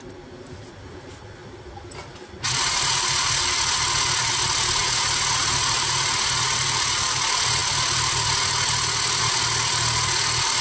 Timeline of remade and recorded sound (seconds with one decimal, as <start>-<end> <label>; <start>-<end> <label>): 0.0-10.6 recorded